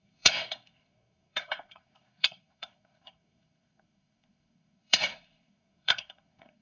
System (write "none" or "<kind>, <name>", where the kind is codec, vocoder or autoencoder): codec, SNAC